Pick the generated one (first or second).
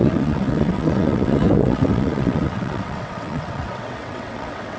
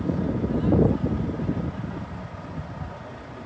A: first